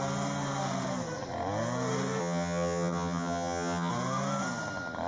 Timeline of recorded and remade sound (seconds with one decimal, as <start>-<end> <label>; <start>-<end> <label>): 0.0-2.2 recorded; 2.2-3.9 remade; 3.9-5.1 recorded